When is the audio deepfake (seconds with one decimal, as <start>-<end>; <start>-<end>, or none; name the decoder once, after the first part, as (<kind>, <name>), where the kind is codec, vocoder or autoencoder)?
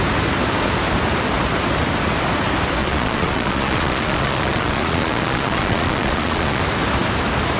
2.8-6.6 (vocoder, Vocos)